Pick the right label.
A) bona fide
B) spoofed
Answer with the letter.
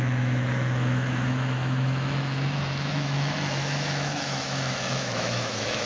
B